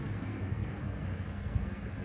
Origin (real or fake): fake